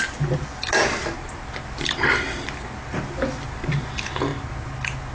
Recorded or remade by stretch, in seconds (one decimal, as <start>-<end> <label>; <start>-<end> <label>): 0.0-5.1 recorded